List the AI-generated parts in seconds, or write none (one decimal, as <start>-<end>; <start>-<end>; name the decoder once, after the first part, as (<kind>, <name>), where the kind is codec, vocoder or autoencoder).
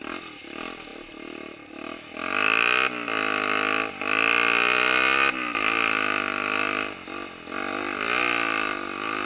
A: none